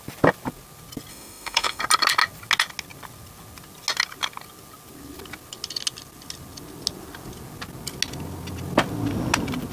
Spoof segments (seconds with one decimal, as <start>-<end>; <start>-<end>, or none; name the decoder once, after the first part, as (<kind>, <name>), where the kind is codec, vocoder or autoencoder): 1.1-1.8 (autoencoder, DAC-VAE)